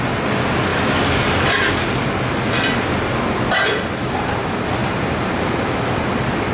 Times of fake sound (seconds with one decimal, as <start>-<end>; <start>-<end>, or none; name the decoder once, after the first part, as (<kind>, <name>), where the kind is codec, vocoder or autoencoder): 0.7-1.7 (vocoder, BigVGAN v2); 4.8-5.6